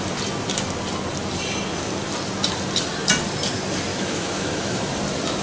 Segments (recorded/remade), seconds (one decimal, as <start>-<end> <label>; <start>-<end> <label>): 0.0-3.9 recorded; 3.9-4.9 remade; 4.9-5.4 recorded